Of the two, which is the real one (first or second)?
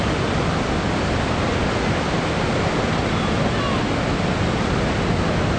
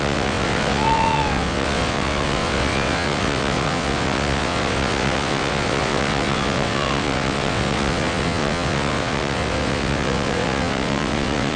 first